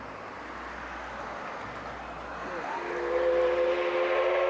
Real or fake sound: real